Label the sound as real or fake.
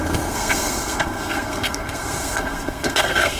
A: fake